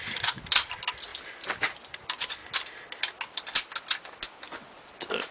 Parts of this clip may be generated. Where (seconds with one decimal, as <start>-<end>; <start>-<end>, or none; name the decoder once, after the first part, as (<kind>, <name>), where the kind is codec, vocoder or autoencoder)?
0.0-2.4 (vocoder, BigVGAN v2)